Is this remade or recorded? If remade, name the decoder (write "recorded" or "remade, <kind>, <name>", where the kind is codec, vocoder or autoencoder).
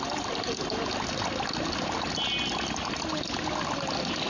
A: recorded